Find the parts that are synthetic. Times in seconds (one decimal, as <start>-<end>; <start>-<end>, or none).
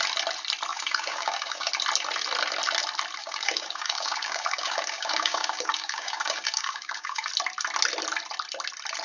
0.7-1.7; 3.2-7.3